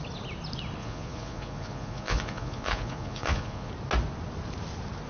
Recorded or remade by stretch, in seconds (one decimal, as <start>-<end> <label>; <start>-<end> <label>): 0.0-0.8 recorded; 0.8-3.7 remade; 3.7-5.1 recorded